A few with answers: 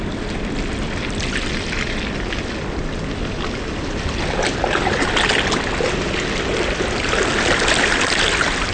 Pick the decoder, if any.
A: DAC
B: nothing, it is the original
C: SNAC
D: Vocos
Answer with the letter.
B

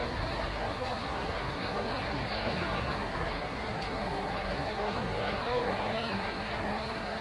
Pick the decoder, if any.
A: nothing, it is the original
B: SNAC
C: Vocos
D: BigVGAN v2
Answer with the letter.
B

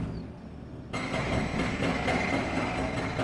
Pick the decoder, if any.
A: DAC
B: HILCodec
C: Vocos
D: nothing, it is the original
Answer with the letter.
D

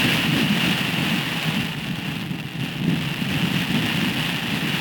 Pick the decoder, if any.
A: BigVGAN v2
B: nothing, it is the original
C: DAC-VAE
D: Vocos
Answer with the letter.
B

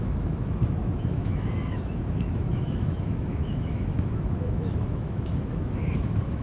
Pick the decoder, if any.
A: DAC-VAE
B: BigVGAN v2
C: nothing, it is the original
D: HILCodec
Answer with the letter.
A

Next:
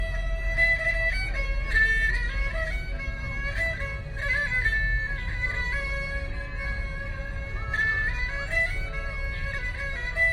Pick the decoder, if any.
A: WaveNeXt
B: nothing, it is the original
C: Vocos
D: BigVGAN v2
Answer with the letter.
B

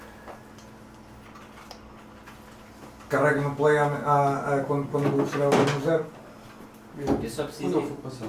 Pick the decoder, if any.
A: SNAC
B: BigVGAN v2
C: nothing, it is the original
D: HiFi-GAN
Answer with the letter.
C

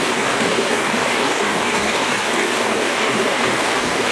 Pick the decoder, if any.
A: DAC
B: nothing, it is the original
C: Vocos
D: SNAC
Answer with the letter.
A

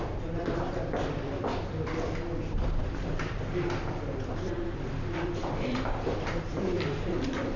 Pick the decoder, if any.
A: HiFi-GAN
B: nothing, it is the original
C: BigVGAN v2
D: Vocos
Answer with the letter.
C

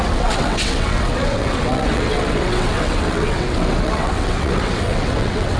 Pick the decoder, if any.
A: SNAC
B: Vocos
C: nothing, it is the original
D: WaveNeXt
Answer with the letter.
D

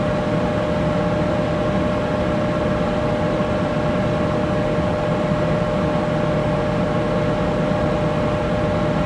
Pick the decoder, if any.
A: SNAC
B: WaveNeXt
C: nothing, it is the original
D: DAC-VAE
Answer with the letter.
C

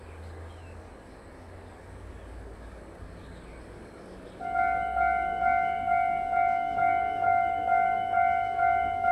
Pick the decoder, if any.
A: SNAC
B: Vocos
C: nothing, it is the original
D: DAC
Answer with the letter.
D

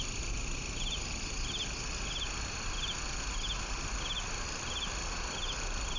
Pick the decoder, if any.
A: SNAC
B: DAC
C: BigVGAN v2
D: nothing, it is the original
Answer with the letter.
D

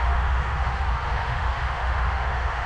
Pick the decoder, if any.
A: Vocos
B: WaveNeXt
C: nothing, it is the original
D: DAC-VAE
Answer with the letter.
D